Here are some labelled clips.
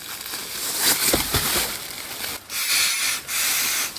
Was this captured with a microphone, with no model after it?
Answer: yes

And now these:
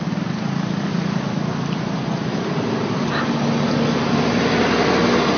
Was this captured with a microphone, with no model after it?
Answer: yes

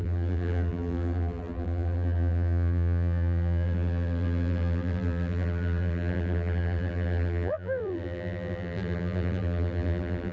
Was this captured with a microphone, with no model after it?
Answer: no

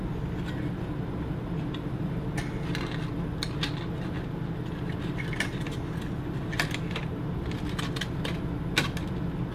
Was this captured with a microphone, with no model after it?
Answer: yes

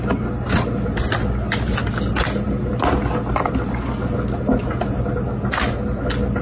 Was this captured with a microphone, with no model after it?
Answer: yes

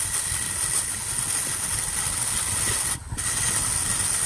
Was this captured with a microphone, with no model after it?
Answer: yes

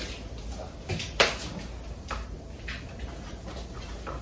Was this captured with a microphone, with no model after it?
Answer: yes